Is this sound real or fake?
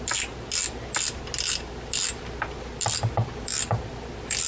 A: real